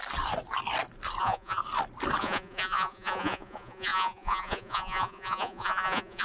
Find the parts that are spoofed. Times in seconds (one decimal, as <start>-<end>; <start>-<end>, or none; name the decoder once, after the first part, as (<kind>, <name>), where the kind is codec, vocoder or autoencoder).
1.2-1.6 (vocoder, Vocos); 2.2-6.2